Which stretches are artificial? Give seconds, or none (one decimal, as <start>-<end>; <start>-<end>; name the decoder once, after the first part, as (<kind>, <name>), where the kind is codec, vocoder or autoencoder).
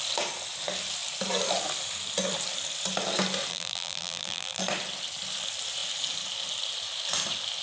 3.5-4.6 (vocoder, BigVGAN v2)